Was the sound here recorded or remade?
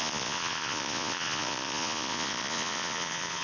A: remade